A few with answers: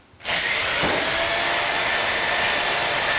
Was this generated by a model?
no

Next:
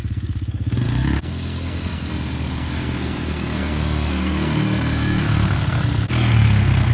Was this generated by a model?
yes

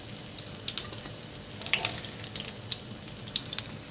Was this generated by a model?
no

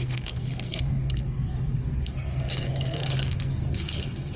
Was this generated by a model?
yes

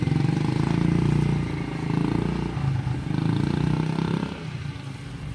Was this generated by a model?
no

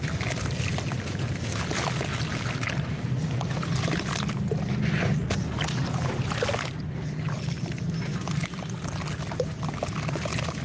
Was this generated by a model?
no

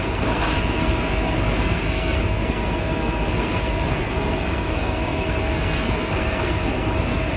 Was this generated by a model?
yes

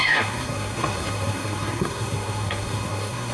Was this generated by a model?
yes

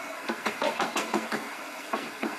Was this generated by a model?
yes